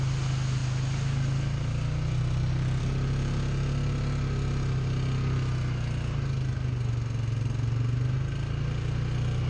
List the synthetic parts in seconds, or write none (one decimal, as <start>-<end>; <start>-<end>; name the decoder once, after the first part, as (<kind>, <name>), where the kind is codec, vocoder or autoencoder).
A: none